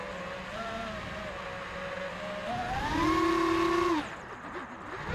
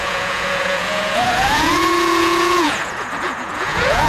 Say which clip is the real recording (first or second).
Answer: first